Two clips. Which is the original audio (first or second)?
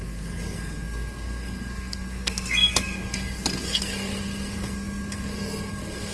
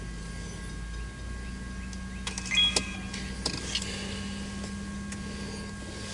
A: second